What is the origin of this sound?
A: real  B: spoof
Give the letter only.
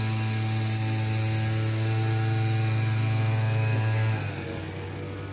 A